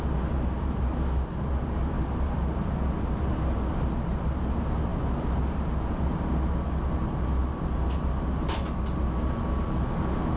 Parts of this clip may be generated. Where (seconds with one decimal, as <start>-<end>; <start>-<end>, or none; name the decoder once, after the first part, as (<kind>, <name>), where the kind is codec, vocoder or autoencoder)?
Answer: none